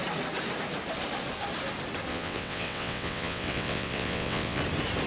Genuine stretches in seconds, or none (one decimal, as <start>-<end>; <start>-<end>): 0.0-2.1; 4.6-5.1